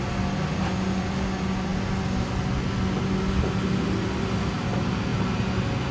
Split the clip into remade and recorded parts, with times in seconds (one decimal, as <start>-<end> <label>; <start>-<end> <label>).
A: 0.0-5.9 recorded